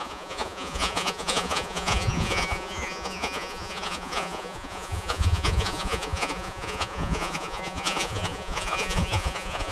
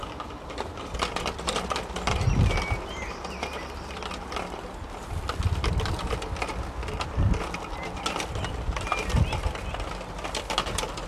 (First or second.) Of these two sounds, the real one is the second